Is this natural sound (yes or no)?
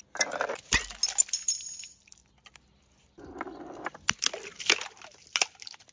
yes